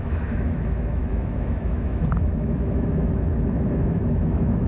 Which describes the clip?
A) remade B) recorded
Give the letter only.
A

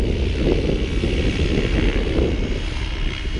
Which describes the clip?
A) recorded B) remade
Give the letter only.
A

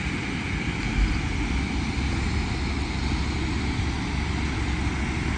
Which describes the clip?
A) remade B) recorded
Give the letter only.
B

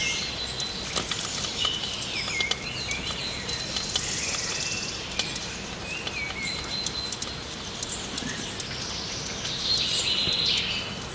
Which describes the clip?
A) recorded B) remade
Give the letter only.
A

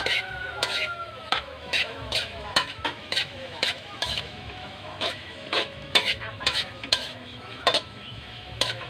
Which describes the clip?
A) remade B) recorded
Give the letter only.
A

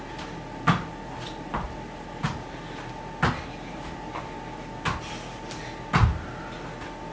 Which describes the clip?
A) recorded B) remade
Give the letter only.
A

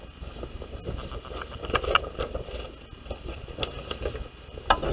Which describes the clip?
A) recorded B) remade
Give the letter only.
A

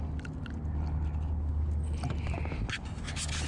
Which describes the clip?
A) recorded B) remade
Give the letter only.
A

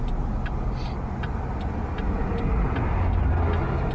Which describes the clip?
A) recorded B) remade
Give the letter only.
A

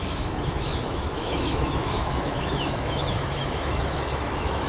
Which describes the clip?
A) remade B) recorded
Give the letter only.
A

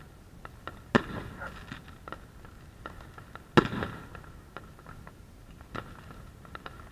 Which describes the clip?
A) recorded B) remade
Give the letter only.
A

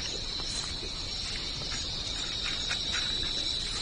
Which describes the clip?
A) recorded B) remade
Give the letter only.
A